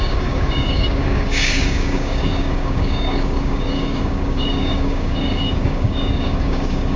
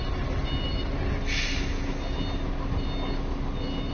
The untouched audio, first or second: second